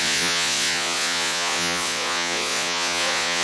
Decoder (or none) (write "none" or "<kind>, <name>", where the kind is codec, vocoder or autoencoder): vocoder, Vocos